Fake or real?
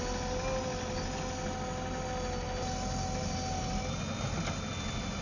real